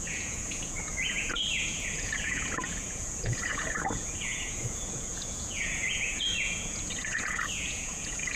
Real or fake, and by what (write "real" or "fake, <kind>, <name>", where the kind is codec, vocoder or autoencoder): fake, vocoder, Vocos